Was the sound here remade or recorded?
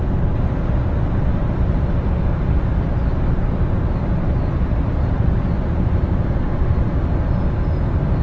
recorded